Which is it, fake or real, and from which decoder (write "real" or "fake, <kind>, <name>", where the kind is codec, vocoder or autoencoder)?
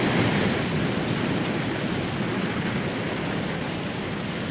real